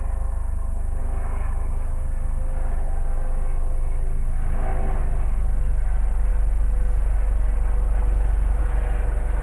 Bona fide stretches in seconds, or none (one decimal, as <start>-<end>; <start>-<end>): 0.0-9.4